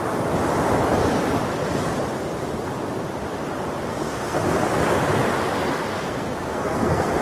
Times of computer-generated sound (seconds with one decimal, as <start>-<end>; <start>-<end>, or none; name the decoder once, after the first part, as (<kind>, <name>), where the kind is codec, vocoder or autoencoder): 3.9-4.4 (codec, SNAC); 5.9-7.2